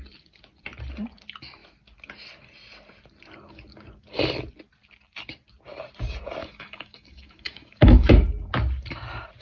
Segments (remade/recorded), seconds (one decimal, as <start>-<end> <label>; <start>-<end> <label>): 0.0-6.4 recorded; 6.4-8.1 remade; 8.1-9.4 recorded